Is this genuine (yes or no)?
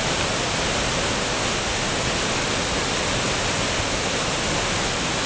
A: yes